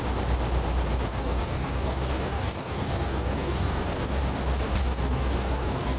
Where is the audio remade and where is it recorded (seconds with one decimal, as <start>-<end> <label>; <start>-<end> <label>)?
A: 0.0-1.1 recorded; 1.1-4.2 remade; 4.2-4.8 recorded; 4.8-6.0 remade